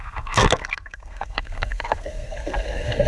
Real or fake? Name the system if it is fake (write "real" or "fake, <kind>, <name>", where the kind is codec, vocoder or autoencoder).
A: fake, codec, SNAC